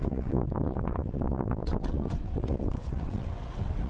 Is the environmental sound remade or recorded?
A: remade